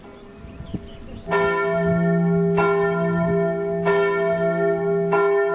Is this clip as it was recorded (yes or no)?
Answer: yes